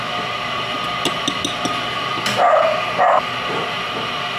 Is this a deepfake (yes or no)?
no